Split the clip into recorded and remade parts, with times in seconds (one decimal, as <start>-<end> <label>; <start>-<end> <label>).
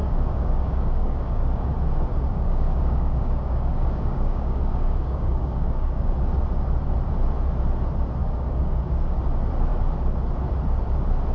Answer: 0.0-1.7 remade; 1.7-2.3 recorded; 2.3-6.1 remade; 6.1-8.2 recorded; 8.2-9.2 remade; 9.2-11.3 recorded